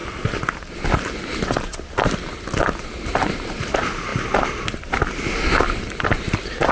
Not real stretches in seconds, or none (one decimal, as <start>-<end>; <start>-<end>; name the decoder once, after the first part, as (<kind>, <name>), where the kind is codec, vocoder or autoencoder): none